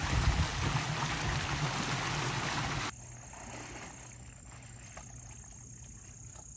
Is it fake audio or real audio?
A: real